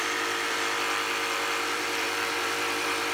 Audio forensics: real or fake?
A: fake